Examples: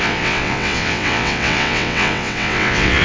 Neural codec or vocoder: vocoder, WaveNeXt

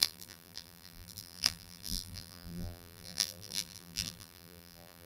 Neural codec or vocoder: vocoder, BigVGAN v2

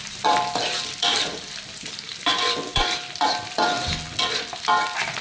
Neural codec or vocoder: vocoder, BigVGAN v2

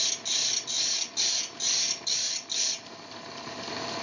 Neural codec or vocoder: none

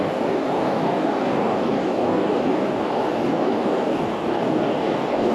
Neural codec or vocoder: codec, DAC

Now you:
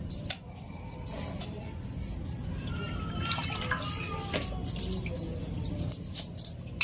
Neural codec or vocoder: none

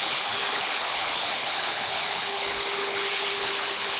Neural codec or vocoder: codec, HILCodec